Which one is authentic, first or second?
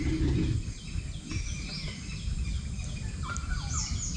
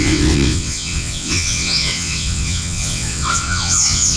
first